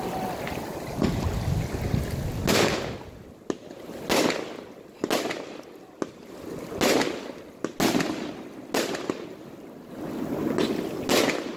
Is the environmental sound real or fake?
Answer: real